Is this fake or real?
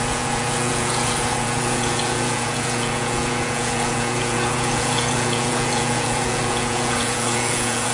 fake